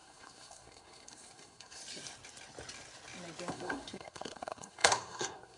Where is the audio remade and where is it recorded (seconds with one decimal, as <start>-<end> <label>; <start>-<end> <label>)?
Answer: 0.0-1.8 remade; 1.8-3.5 recorded; 3.5-5.6 remade